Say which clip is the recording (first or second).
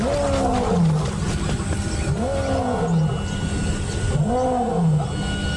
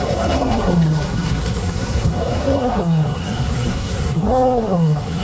first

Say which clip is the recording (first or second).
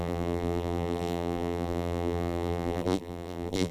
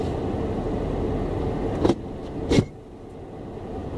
second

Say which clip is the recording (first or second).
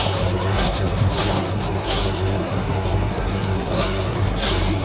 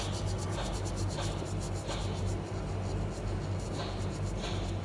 second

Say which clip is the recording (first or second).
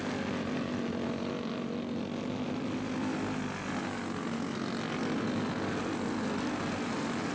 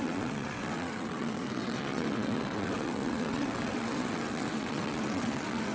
first